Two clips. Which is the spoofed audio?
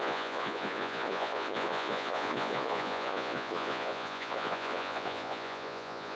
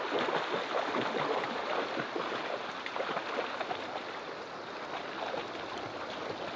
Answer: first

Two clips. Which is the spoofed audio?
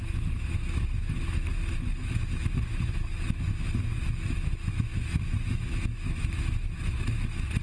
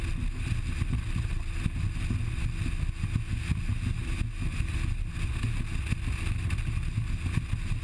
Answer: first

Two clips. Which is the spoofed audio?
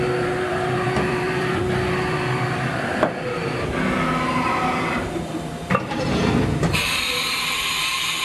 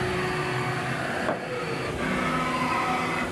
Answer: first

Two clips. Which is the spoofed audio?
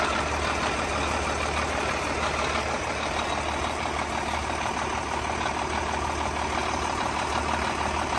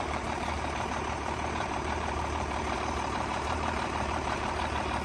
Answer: second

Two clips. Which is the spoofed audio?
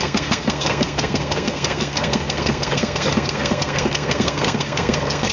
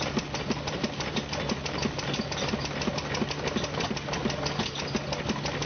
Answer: first